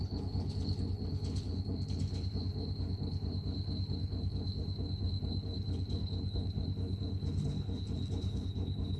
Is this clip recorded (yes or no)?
no